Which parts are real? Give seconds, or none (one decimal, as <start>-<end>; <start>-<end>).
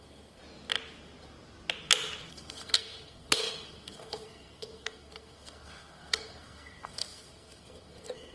0.4-2.3